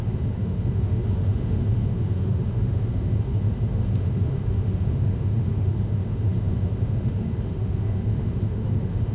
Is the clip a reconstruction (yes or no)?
yes